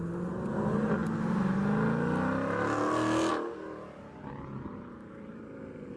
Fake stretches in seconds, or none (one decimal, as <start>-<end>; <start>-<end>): none